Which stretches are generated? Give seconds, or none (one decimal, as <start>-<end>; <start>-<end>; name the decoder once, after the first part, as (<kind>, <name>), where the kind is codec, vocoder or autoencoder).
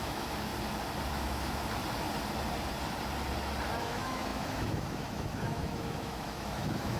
0.0-0.5 (autoencoder, DAC-VAE); 1.1-1.8; 3.8-7.0